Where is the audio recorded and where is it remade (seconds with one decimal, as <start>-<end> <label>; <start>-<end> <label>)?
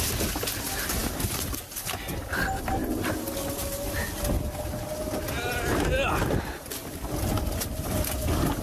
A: 0.0-8.6 recorded